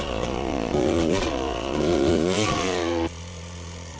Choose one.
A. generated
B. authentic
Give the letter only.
A